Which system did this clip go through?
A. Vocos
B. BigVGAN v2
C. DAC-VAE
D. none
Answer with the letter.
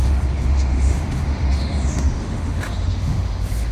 C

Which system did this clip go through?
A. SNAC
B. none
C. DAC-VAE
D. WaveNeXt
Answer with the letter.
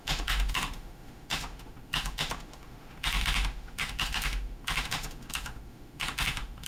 C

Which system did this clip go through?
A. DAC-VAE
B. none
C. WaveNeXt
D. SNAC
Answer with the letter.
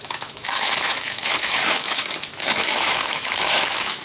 A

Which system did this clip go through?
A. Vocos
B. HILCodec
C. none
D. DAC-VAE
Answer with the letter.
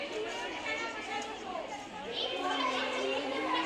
C